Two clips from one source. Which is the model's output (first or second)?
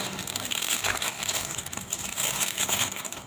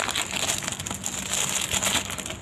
first